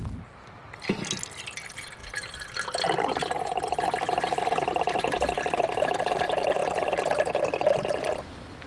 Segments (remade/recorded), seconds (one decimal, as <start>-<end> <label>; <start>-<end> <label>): 0.0-8.7 recorded